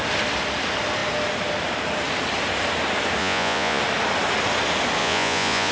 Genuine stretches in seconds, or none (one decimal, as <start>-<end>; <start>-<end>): 0.0-3.2; 3.8-5.0